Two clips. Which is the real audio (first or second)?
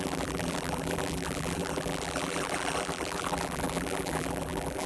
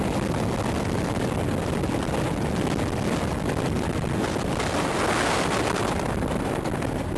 second